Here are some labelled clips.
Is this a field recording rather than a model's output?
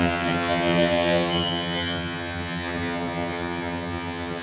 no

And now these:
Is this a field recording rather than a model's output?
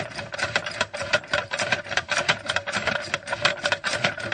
no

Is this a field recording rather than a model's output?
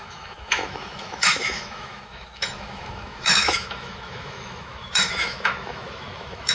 no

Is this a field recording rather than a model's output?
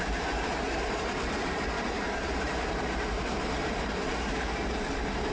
no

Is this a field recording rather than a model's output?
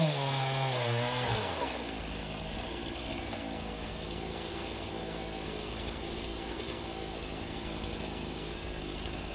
no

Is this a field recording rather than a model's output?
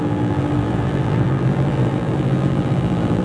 no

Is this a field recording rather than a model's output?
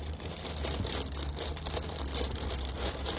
yes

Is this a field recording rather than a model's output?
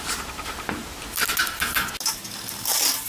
yes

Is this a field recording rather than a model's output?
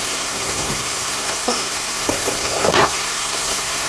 no